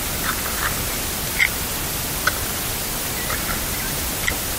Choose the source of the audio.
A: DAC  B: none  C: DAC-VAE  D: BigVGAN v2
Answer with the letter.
B